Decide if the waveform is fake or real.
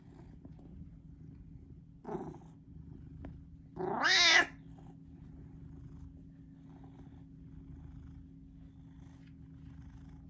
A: real